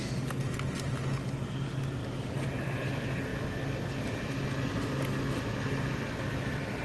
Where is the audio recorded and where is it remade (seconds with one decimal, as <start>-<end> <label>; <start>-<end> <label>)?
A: 0.0-6.8 recorded